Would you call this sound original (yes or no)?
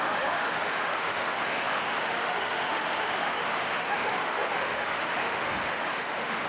no